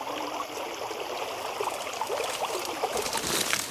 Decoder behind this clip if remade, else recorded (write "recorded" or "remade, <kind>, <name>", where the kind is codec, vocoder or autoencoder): recorded